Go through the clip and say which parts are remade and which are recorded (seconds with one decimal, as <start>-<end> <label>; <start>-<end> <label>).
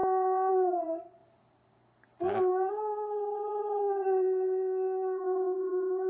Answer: 0.0-1.2 remade; 1.2-2.7 recorded; 2.7-6.1 remade